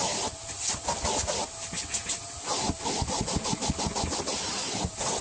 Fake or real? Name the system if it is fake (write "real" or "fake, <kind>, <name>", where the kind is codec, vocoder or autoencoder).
real